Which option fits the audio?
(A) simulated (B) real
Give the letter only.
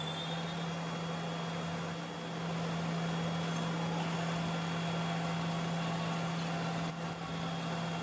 B